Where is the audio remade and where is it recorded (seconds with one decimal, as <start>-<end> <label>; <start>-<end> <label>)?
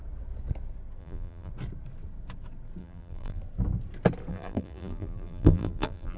0.0-1.0 recorded; 1.0-1.5 remade; 1.5-2.8 recorded; 2.8-3.4 remade; 3.4-4.3 recorded; 4.3-6.2 remade